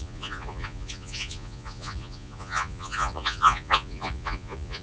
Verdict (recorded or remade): remade